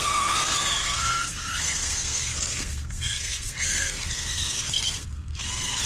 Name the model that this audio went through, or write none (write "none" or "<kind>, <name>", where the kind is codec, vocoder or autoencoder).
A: codec, SNAC